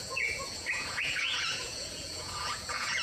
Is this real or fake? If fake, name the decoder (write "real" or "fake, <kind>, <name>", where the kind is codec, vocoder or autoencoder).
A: fake, vocoder, Vocos